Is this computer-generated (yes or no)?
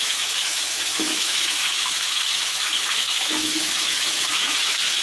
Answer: yes